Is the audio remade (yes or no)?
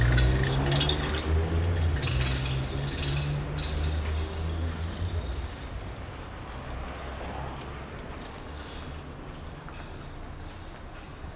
no